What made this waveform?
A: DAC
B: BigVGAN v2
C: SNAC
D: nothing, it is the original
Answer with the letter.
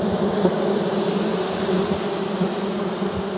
D